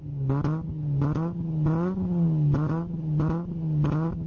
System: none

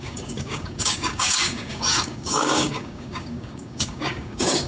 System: codec, DAC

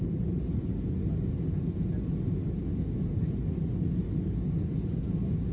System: none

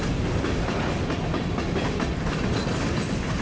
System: none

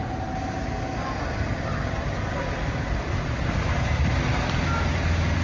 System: none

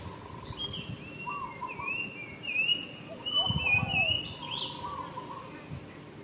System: none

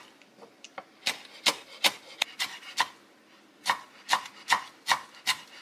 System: none